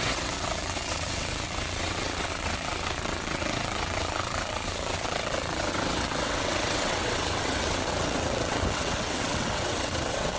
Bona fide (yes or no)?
no